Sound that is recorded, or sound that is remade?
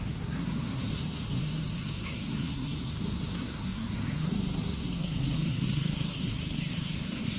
remade